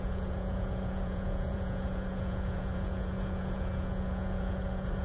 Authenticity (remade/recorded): remade